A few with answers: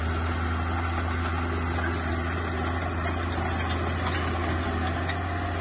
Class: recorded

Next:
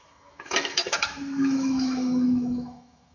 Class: remade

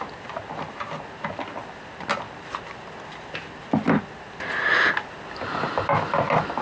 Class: recorded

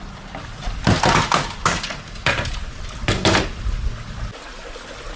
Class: recorded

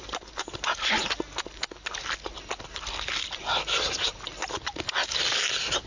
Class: recorded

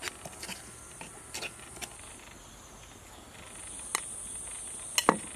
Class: recorded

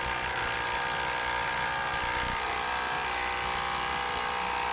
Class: recorded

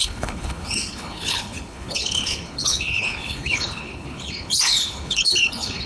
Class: remade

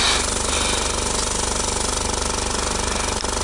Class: recorded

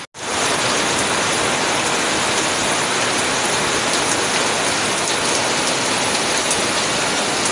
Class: recorded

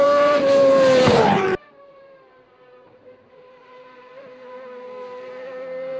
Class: remade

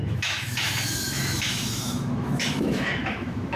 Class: remade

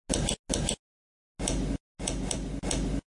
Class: recorded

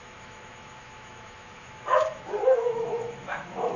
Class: remade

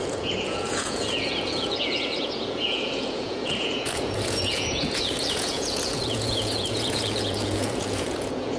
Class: remade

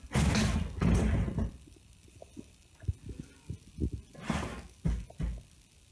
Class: recorded